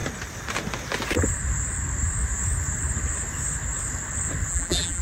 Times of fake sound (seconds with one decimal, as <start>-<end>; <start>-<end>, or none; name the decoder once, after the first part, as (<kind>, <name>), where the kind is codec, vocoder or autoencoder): 4.5-5.0 (vocoder, BigVGAN v2)